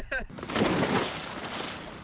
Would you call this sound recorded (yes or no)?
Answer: yes